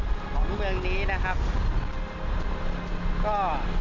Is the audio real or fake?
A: real